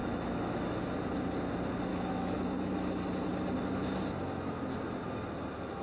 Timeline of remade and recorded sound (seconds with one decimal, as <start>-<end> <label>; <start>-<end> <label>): 0.0-0.8 remade; 0.8-1.9 recorded; 1.9-2.7 remade; 2.7-5.8 recorded